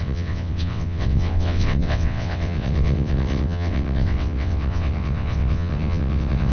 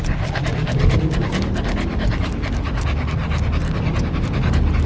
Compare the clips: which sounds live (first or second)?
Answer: second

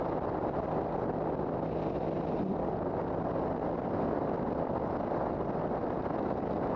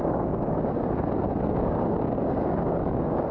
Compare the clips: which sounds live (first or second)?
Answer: first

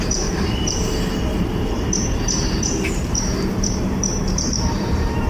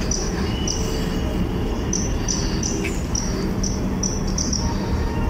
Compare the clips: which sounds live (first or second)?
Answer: second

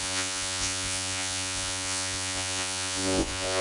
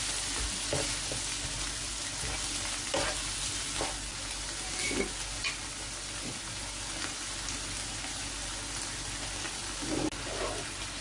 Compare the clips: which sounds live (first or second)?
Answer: second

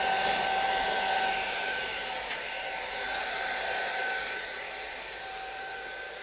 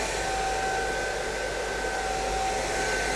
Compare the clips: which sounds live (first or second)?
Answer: second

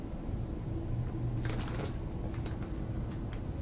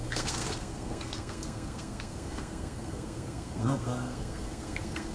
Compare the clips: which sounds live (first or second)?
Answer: first